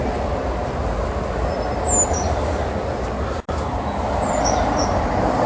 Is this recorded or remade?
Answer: recorded